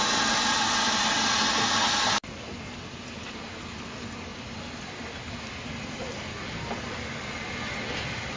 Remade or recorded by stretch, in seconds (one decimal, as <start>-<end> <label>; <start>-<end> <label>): 0.0-8.4 recorded